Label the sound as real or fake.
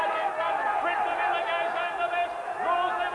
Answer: real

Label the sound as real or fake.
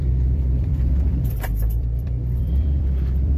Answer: fake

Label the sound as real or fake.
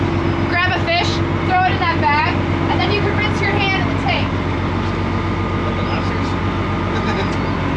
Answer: real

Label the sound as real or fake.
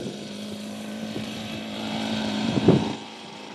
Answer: fake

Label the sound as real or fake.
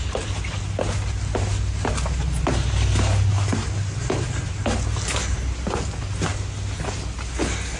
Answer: real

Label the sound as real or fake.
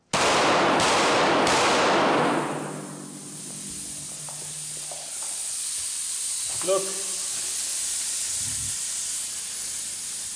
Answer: real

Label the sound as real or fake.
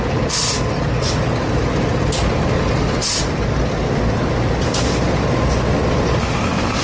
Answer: real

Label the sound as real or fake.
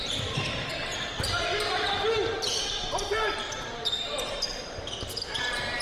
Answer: fake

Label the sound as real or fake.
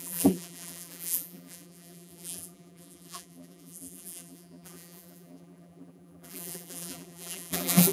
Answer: fake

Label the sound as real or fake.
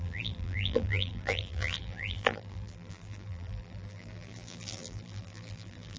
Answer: fake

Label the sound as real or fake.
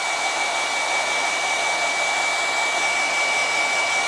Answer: real